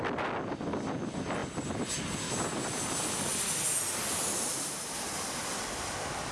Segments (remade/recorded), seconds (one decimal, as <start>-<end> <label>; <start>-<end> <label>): 0.0-1.4 recorded; 1.4-2.8 remade; 2.8-6.3 recorded